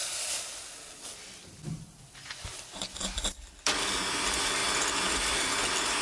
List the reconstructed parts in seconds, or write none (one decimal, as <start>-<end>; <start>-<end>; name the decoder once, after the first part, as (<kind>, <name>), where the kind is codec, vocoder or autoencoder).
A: none